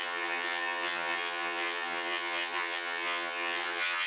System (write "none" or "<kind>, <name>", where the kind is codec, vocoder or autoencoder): vocoder, HiFi-GAN